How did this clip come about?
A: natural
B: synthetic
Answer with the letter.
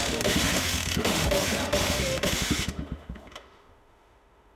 B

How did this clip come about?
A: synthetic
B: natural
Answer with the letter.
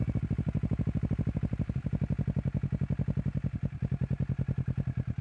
B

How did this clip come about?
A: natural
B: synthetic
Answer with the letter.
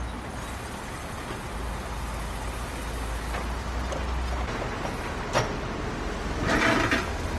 A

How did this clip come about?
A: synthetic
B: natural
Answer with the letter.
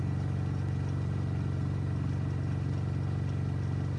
B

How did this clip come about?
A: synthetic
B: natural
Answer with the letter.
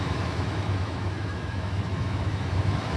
A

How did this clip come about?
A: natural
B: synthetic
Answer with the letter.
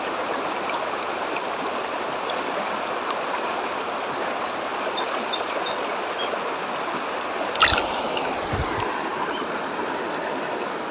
A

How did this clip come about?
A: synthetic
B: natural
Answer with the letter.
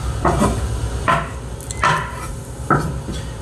B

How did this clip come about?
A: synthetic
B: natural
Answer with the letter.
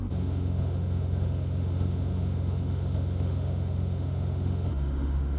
A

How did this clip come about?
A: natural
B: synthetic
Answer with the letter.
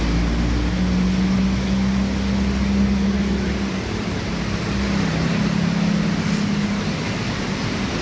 A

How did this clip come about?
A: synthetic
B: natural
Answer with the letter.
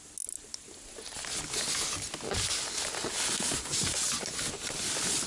B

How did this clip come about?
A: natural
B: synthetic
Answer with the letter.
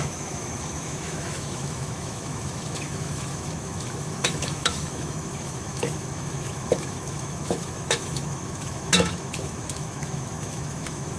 B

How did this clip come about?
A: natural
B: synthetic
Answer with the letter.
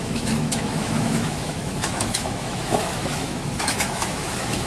B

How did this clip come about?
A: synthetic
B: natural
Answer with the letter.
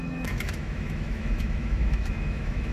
A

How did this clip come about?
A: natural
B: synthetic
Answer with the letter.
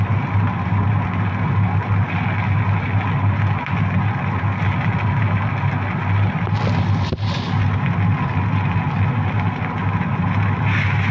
A